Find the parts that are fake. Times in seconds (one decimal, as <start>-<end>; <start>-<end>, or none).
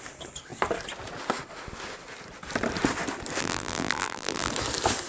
3.4-4.5